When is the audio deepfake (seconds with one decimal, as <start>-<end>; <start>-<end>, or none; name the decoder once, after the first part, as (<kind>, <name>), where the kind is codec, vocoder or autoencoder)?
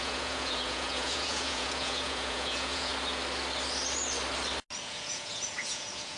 0.0-2.9 (vocoder, Vocos); 4.8-6.2